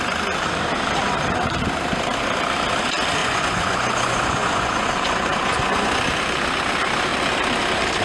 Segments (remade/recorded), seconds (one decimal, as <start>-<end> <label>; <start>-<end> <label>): 0.0-3.2 recorded; 3.2-6.0 remade; 6.0-8.0 recorded